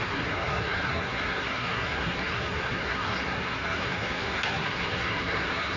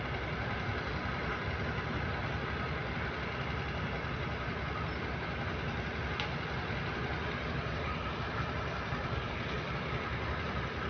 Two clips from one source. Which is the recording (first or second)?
second